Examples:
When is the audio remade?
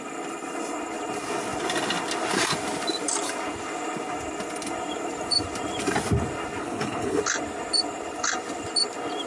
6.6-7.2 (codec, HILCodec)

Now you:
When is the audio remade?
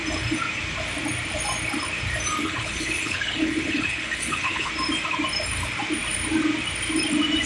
2.4-4.7 (codec, HILCodec)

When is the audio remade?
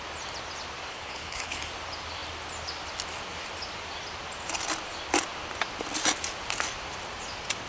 0.9-1.6 (codec, HILCodec)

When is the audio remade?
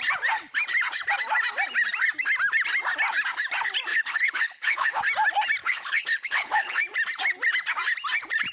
3.9-5.0 (codec, HILCodec); 5.6-6.8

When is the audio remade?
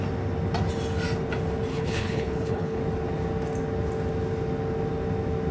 1.7-2.8 (codec, HILCodec)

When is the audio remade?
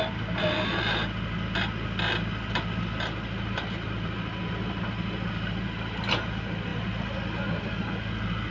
none